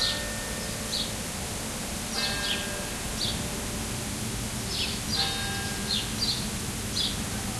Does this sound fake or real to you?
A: real